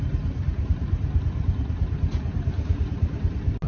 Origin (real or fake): real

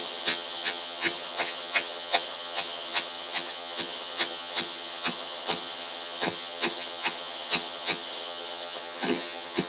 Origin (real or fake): fake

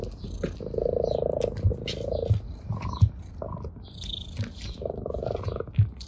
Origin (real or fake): real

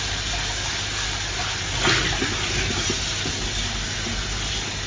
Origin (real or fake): real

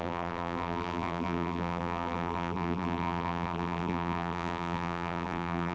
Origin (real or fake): fake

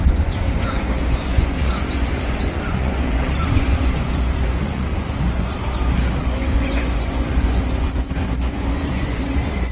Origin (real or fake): fake